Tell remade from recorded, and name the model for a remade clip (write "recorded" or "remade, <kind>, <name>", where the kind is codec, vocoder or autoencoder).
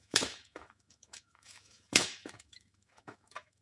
remade, autoencoder, DAC-VAE